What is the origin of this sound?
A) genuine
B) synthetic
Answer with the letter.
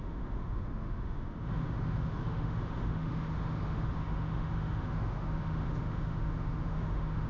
B